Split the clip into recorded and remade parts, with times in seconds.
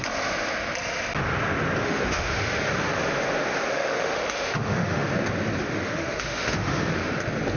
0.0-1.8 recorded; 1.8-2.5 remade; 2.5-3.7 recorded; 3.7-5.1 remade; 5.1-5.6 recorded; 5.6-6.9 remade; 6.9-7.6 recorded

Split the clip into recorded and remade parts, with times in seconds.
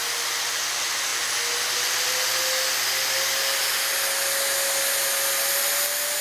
0.0-6.2 recorded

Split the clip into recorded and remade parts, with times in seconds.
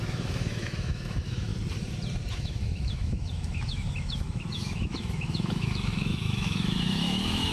0.0-1.5 remade; 1.5-2.3 recorded; 2.3-7.5 remade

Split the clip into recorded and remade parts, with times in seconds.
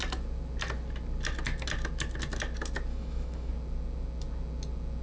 0.0-2.9 recorded; 2.9-3.5 remade; 3.5-5.0 recorded